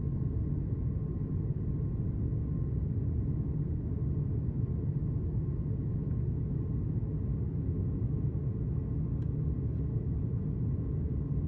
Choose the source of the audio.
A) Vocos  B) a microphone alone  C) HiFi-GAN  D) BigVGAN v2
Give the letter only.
B